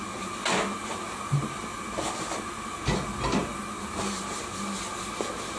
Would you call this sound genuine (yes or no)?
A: yes